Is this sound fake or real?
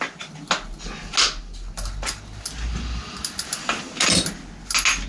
real